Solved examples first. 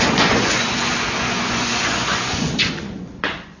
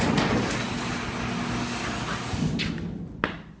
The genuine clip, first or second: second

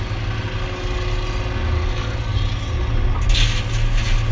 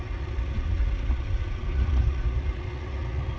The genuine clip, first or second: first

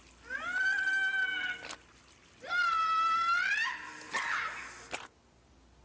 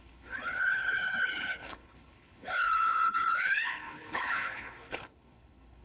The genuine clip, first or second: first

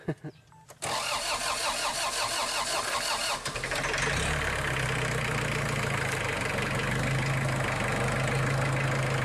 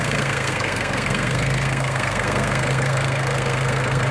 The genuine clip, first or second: first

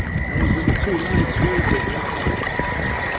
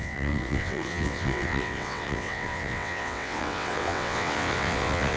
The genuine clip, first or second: first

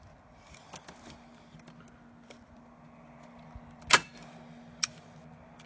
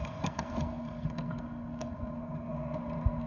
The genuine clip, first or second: first